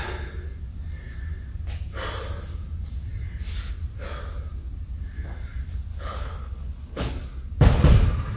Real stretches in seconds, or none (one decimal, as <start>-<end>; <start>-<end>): 0.0-5.9; 7.1-8.4